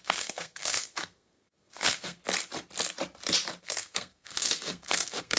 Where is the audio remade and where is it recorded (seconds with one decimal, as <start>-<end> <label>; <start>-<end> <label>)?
0.0-2.2 remade; 2.2-3.6 recorded; 3.6-5.4 remade